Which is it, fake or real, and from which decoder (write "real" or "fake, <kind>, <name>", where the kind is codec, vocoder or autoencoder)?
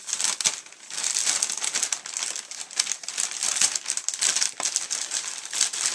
real